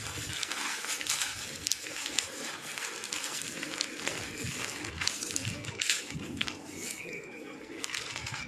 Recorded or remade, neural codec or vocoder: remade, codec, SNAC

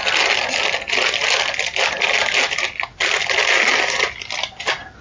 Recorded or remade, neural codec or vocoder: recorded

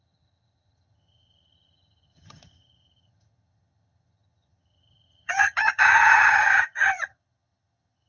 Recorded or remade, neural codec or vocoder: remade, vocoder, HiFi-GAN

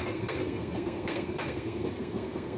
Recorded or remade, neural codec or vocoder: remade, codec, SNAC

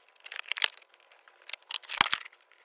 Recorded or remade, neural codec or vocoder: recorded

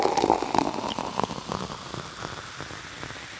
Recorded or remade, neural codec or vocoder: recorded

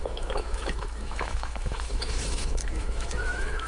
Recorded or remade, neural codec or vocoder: remade, autoencoder, DAC-VAE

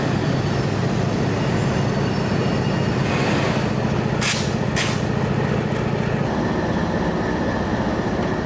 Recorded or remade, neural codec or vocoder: recorded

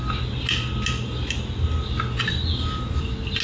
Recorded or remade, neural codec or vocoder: recorded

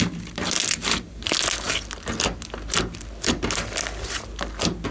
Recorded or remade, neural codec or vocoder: recorded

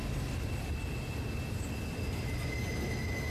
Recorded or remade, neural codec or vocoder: recorded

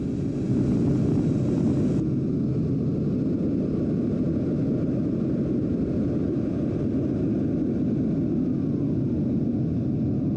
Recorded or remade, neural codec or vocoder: recorded